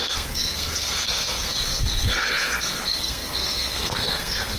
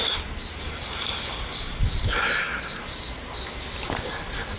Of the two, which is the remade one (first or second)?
first